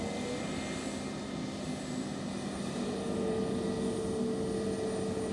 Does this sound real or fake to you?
real